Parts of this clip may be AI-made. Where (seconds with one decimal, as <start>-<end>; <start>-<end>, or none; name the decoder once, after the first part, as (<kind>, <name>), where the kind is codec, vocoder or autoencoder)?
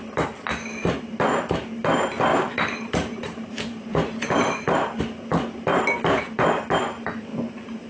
0.8-1.3 (vocoder, BigVGAN v2); 2.3-5.0; 5.7-6.6; 7.3-7.9